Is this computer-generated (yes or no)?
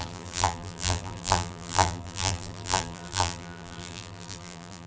yes